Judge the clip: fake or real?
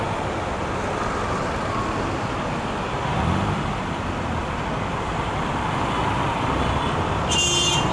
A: real